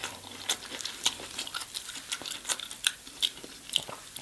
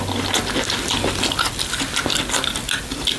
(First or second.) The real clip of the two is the second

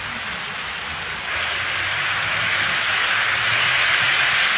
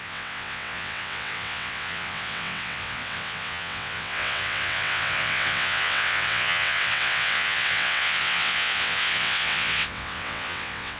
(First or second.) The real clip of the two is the first